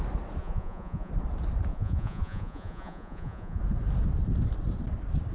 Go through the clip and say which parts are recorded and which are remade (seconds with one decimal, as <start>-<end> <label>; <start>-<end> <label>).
0.0-0.4 recorded; 0.4-1.1 remade; 1.1-1.7 recorded; 1.7-3.6 remade; 3.6-5.3 recorded